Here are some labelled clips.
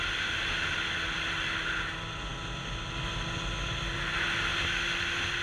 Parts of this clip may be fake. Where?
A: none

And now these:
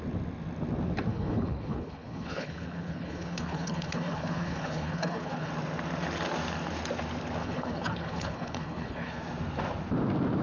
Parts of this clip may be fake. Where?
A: 1.1-5.5 (codec, HILCodec); 7.4-9.2

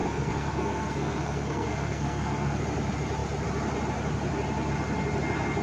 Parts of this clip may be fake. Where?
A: 0.0-2.6 (codec, SNAC)

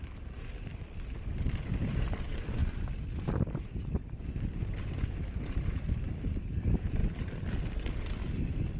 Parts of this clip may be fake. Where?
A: 0.0-0.7 (vocoder, BigVGAN v2); 1.9-2.6; 4.0-7.0

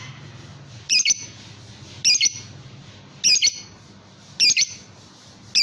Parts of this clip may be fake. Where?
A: none

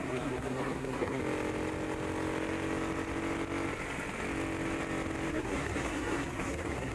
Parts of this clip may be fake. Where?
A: 0.0-1.2 (codec, SNAC); 5.3-6.9